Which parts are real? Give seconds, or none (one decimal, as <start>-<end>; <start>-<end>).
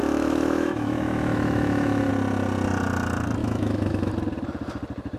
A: 2.1-3.4; 4.1-5.2